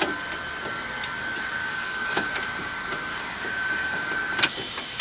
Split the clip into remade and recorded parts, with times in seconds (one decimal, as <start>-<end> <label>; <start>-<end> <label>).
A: 0.0-1.6 recorded; 1.6-2.3 remade; 2.3-3.1 recorded; 3.1-4.1 remade; 4.1-5.0 recorded